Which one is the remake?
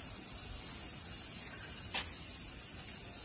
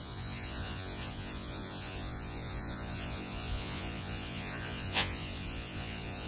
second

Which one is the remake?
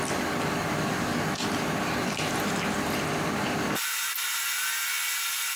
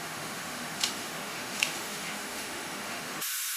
second